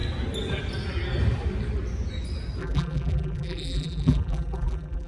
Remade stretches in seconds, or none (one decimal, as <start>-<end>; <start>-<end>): 2.6-5.1